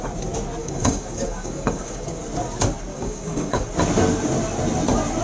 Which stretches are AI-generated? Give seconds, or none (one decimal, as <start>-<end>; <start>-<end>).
0.6-2.2; 2.9-3.6